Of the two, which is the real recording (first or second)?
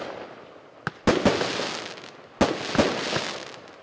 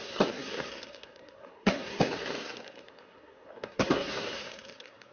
first